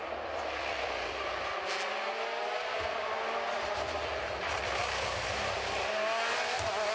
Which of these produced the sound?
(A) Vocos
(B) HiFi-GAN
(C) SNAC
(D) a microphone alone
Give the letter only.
D